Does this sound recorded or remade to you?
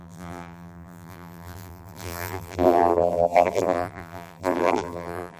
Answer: remade